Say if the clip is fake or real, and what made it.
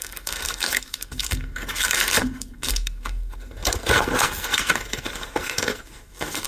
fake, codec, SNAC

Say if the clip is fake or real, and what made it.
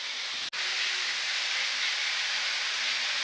real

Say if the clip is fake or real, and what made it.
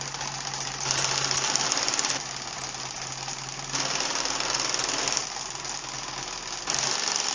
real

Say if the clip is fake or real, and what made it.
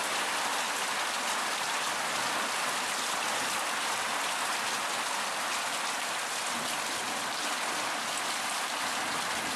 real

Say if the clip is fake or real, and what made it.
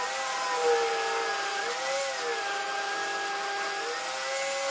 real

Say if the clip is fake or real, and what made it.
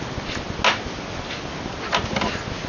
real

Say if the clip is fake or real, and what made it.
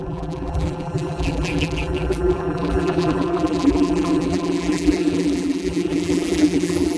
fake, vocoder, BigVGAN v2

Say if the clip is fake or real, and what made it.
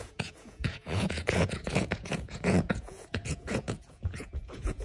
fake, vocoder, Vocos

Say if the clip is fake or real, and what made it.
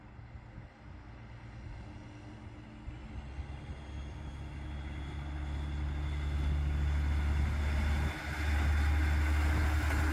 real